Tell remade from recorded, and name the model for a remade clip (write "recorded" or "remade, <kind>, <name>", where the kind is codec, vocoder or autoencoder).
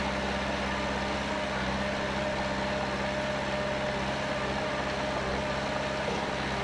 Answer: recorded